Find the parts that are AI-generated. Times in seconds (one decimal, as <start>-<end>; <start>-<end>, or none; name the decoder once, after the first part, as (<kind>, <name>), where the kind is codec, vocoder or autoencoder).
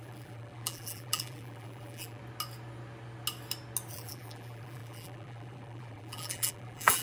0.0-2.2 (vocoder, BigVGAN v2); 3.9-7.0